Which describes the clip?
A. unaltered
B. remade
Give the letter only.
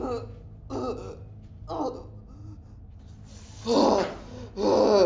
A